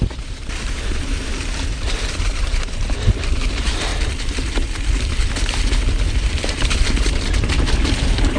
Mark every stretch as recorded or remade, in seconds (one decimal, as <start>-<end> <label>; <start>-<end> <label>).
0.0-3.9 remade; 3.9-6.3 recorded; 6.3-8.4 remade